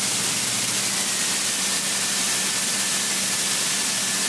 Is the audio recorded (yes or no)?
yes